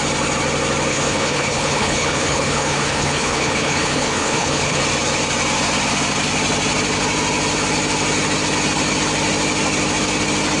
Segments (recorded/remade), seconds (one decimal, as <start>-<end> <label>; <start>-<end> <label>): 0.0-0.9 recorded; 0.9-4.8 remade; 4.8-10.6 recorded

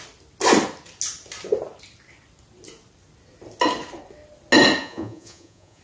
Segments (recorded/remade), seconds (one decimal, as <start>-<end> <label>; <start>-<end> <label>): 0.0-4.8 recorded; 4.8-5.8 remade

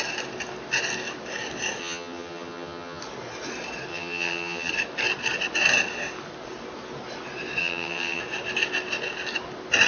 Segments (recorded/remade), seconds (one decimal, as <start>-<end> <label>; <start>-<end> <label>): 0.0-1.8 recorded; 1.8-3.0 remade; 3.0-3.9 recorded; 3.9-4.7 remade; 4.7-7.6 recorded; 7.6-8.2 remade; 8.2-9.9 recorded

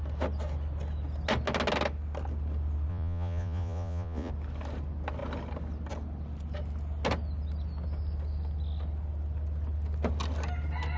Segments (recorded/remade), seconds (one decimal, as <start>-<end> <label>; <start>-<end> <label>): 0.0-2.9 recorded; 2.9-4.3 remade; 4.3-11.0 recorded

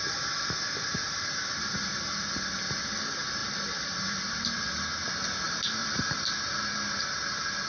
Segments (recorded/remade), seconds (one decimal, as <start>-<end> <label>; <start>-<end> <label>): 0.0-0.9 recorded; 0.9-2.2 remade; 2.2-3.4 recorded; 3.4-4.6 remade; 4.6-5.8 recorded; 5.8-7.0 remade; 7.0-7.7 recorded